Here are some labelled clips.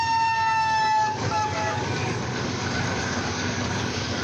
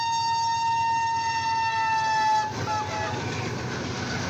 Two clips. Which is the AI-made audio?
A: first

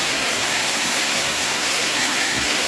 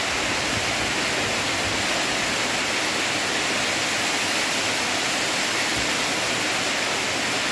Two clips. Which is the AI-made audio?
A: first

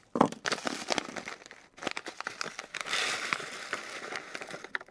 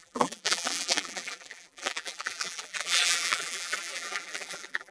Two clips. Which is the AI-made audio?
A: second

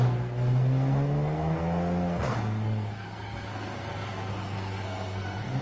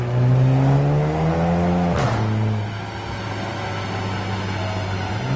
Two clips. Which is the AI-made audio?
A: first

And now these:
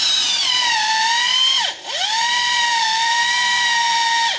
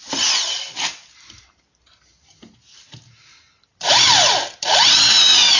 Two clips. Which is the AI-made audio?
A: first